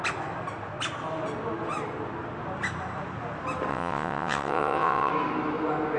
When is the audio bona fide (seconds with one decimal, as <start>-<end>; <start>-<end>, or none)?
0.0-3.7; 5.1-6.0